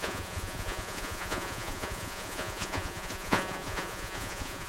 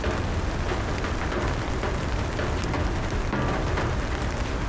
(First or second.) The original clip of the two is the second